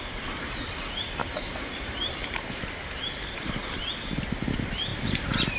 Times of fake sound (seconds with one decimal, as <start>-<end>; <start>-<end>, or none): 1.2-3.7; 4.9-5.6